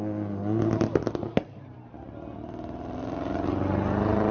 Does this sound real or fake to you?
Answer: real